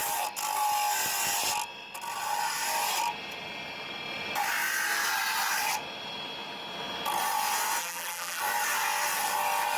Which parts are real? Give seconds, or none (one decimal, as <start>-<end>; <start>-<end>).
0.0-7.8; 8.4-9.8

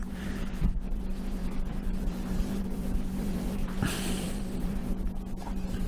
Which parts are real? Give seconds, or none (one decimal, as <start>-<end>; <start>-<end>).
4.8-5.5

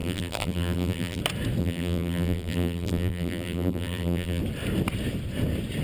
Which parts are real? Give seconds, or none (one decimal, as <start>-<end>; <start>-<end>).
1.2-1.6; 4.4-5.8

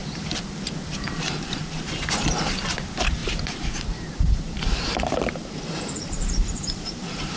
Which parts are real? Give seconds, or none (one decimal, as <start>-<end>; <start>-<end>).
0.0-1.0; 1.6-2.7

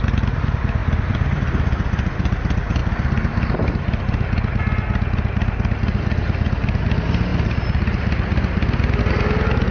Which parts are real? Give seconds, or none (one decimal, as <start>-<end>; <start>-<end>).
0.0-0.8; 1.4-7.3; 9.0-9.7

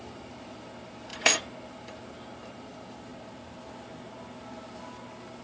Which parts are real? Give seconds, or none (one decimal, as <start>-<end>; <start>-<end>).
3.1-5.4

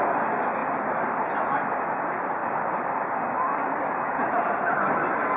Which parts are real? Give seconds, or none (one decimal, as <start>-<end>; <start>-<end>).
0.0-2.4; 3.4-5.4